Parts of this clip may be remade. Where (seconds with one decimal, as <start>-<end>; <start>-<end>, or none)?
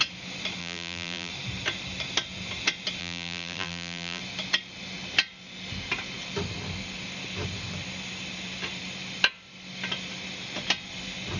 0.6-1.3; 3.0-4.2